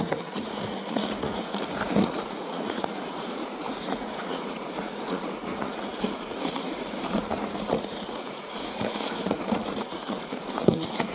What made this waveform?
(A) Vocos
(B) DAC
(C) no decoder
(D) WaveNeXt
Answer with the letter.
A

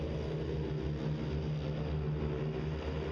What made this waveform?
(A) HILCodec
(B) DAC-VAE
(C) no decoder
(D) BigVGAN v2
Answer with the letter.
C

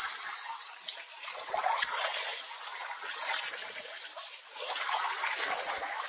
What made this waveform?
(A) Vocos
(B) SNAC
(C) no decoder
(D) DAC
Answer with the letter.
C